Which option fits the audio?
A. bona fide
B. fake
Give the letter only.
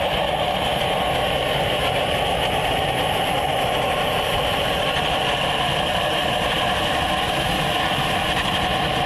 A